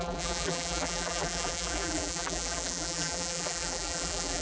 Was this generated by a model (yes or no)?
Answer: yes